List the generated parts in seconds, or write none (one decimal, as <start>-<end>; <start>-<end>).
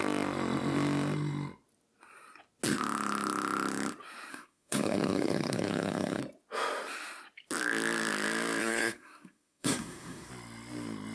4.3-6.2; 8.6-10.3